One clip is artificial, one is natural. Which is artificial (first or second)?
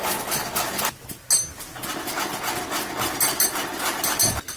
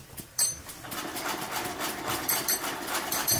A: second